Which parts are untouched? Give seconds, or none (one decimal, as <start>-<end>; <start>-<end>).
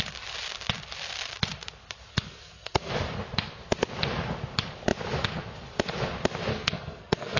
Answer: 0.0-2.1; 2.9-6.5